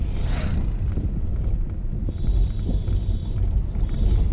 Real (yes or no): yes